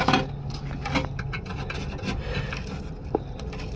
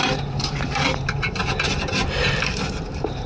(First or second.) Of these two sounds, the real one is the first